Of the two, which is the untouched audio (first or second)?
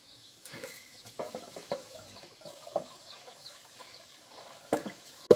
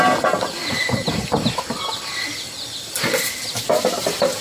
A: second